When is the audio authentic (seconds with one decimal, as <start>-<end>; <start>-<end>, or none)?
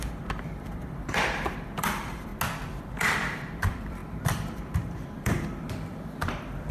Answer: 2.3-2.8